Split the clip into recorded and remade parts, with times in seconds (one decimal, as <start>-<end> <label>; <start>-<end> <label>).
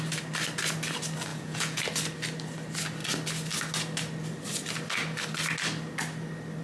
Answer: 0.0-1.3 recorded; 1.3-1.8 remade; 1.8-6.6 recorded